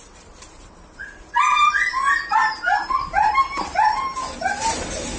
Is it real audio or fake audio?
fake